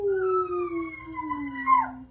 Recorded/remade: recorded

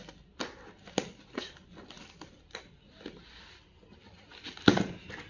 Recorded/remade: recorded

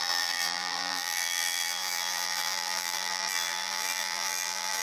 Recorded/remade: remade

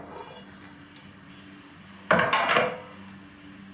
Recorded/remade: recorded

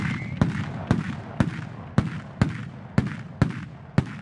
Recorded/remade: recorded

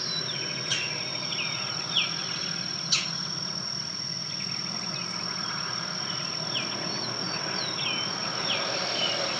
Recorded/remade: recorded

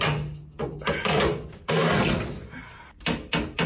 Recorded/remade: recorded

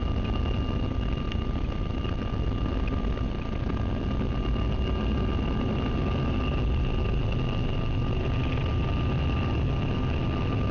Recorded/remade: recorded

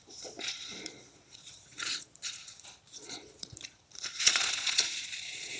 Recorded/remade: remade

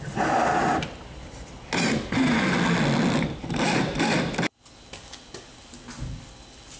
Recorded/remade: recorded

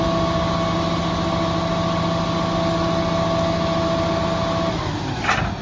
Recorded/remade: recorded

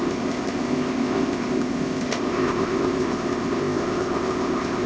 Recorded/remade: remade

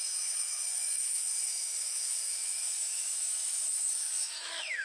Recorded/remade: remade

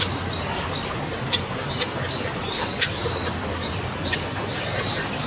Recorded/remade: remade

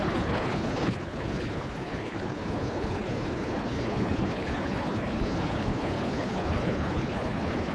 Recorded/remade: remade